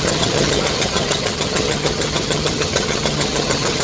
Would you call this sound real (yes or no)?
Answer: no